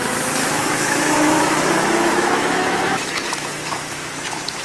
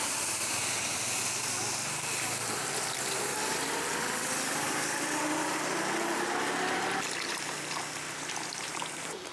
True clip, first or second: second